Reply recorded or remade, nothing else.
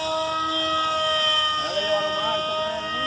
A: recorded